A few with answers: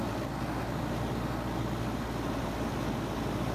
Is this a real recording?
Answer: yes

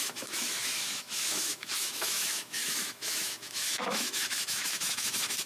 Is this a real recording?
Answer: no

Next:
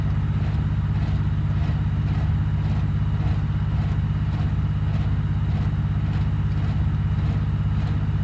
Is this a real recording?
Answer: yes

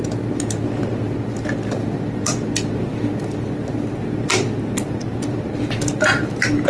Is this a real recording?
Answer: yes